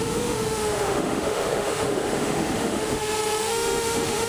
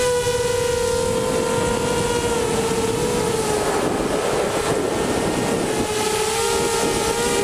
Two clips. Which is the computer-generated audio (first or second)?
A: first